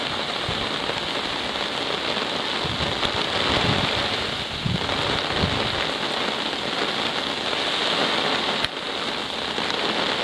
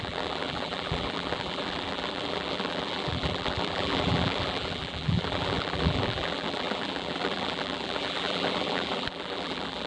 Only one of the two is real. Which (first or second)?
first